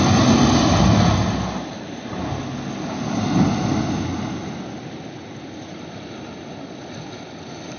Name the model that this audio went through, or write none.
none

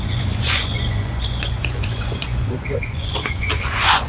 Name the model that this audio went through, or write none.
vocoder, Vocos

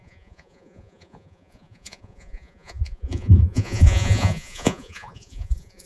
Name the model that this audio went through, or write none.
vocoder, Vocos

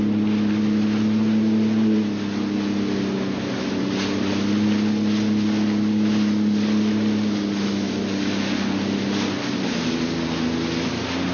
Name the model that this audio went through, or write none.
none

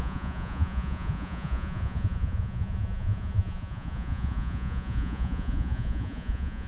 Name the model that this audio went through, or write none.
vocoder, Vocos